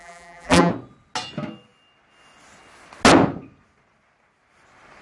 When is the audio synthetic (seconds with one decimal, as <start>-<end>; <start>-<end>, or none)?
0.0-0.7